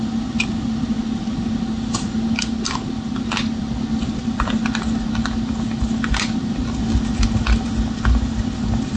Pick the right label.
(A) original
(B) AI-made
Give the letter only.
A